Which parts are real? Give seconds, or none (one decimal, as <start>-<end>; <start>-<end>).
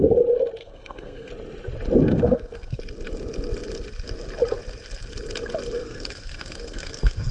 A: 0.0-0.6; 1.3-2.1; 2.8-5.8